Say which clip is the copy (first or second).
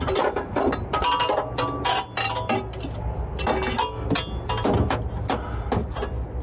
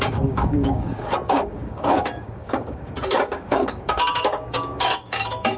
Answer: second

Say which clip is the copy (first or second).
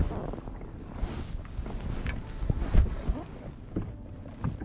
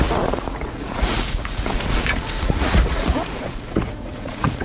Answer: second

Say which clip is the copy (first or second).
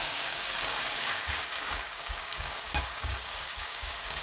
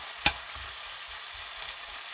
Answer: first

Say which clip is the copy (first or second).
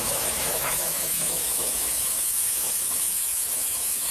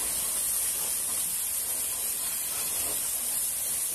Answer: first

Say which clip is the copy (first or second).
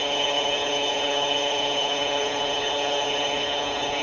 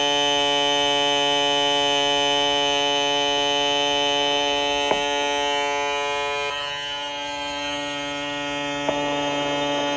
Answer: first